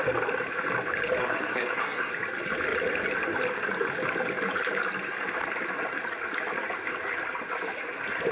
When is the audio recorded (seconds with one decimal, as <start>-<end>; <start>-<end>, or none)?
0.0-1.2; 2.1-8.3